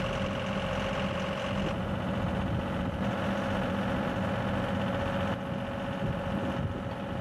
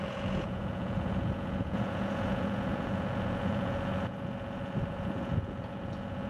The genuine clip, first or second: first